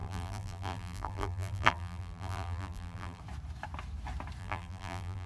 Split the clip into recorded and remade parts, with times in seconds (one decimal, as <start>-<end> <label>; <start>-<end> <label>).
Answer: 0.0-3.2 remade; 3.2-4.4 recorded; 4.4-5.3 remade